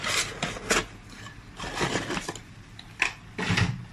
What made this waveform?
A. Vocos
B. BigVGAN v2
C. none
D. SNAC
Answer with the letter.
C